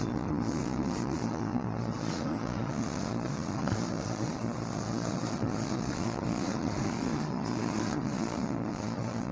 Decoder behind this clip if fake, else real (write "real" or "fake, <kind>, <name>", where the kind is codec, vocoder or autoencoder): fake, vocoder, Vocos